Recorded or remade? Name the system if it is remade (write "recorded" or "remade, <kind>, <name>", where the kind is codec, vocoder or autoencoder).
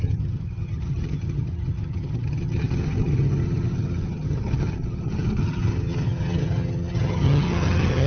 remade, vocoder, HiFi-GAN